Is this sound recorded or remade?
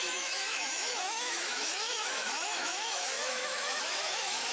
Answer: remade